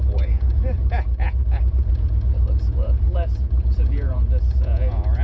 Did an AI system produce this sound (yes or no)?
yes